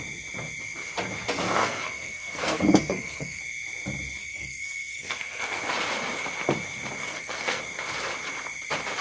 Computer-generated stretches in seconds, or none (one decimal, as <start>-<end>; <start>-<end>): 1.6-3.4; 4.2-5.6; 7.0-7.6